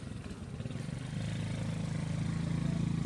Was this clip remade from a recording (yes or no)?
no